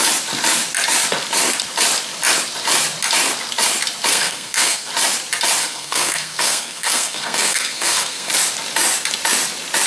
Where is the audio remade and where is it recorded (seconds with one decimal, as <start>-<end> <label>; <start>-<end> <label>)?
0.0-4.1 recorded; 4.1-4.9 remade; 4.9-5.6 recorded; 5.6-8.3 remade; 8.3-9.9 recorded